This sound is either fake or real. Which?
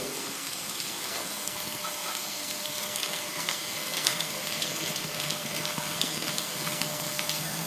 fake